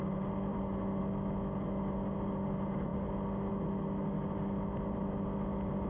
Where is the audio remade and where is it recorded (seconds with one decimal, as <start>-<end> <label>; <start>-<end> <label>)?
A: 0.0-5.9 recorded